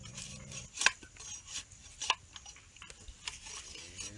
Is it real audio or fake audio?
real